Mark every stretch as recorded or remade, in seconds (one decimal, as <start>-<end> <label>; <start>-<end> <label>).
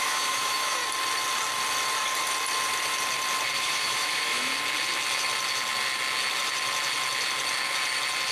0.0-0.8 remade; 0.8-3.6 recorded; 3.6-4.5 remade; 4.5-8.3 recorded